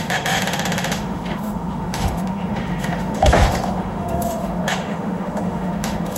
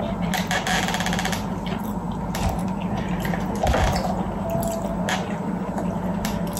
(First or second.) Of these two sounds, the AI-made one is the first